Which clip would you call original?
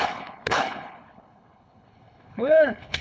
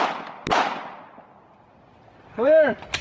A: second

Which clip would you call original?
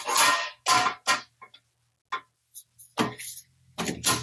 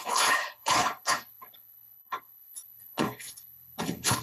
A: first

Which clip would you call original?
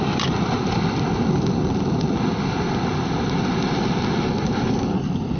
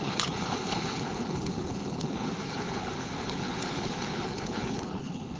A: first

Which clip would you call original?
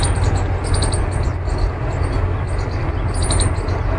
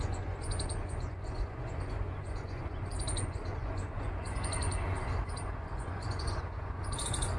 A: first